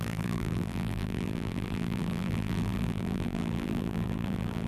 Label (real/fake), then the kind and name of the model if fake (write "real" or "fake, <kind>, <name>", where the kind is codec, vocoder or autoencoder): fake, vocoder, BigVGAN v2